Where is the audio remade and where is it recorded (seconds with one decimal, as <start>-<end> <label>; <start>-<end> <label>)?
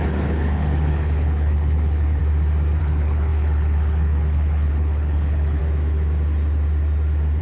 0.0-2.2 remade; 2.2-2.8 recorded; 2.8-5.6 remade; 5.6-7.4 recorded